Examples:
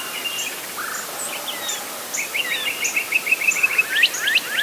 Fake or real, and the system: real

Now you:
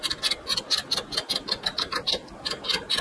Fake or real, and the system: real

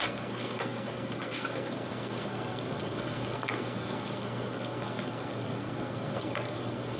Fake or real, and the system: fake, codec, SNAC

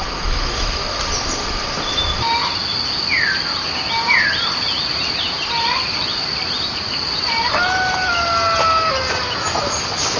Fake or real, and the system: real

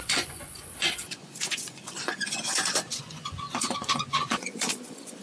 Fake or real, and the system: fake, vocoder, Vocos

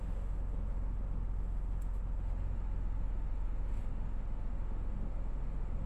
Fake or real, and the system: fake, autoencoder, DAC-VAE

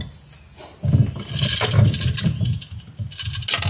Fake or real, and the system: real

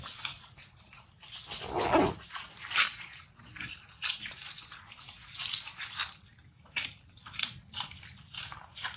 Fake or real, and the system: real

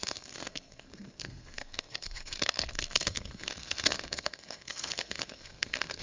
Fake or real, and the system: fake, codec, SNAC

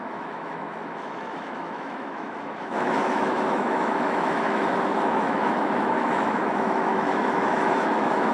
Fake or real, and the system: fake, autoencoder, DAC-VAE